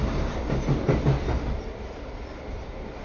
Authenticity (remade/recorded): recorded